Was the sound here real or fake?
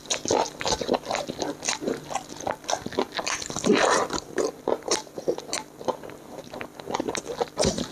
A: real